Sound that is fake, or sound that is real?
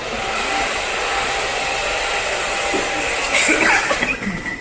real